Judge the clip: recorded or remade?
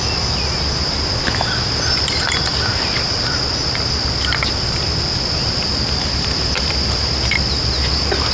recorded